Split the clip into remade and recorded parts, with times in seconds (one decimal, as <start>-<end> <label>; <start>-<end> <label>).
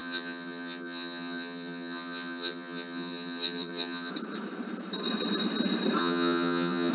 0.0-4.1 remade; 4.1-6.0 recorded; 6.0-6.9 remade